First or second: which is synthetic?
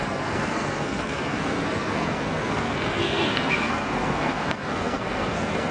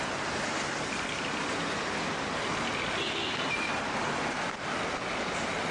first